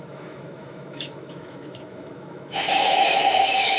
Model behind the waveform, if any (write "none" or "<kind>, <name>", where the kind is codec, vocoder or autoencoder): autoencoder, DAC-VAE